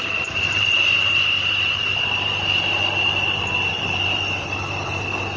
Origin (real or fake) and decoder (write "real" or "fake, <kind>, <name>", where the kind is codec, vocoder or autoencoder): real